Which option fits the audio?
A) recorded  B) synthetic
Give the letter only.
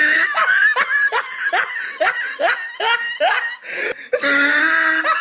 A